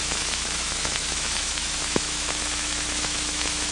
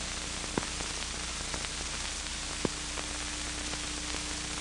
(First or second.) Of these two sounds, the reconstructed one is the first